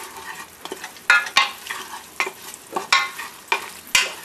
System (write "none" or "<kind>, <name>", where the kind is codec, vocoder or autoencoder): none